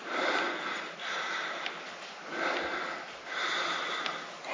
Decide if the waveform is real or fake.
real